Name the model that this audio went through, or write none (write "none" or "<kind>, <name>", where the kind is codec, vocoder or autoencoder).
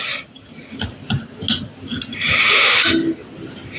none